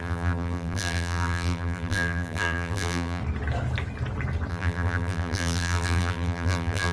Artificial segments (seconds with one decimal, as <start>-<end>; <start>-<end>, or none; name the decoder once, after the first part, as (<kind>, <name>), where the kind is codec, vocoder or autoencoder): 0.0-3.2 (vocoder, BigVGAN v2); 4.5-6.9